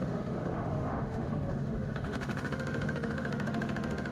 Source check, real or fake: fake